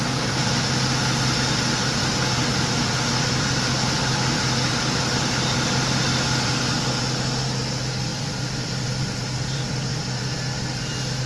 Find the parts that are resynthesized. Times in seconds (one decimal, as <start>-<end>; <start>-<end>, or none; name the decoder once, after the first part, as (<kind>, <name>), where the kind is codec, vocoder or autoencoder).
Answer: 8.1-10.2 (vocoder, BigVGAN v2)